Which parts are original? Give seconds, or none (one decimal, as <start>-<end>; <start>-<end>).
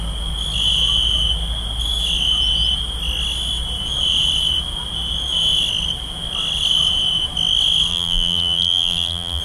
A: 0.0-7.9